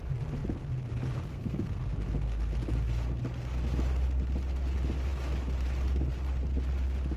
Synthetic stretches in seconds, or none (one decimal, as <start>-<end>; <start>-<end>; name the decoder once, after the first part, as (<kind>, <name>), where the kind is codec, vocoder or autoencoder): 1.3-1.8 (codec, SNAC)